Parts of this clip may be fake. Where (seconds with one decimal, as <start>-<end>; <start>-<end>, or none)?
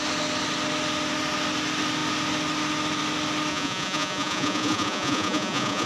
3.5-5.9